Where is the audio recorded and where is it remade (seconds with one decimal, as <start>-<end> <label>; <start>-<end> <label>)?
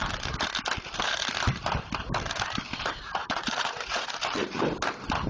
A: 0.0-3.2 recorded; 3.2-4.6 remade; 4.6-5.3 recorded